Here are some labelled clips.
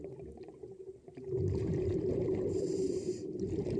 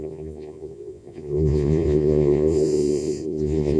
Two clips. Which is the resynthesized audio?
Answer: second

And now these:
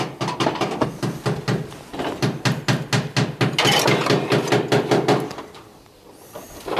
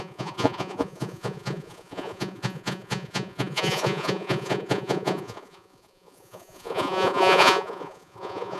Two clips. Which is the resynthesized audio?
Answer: second